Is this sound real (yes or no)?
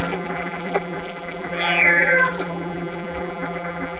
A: no